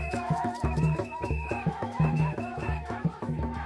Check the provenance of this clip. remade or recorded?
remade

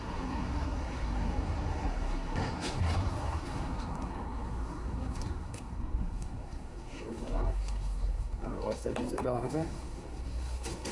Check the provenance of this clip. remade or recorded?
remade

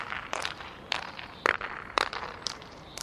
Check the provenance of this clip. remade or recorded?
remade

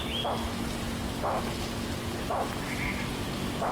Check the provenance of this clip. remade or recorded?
recorded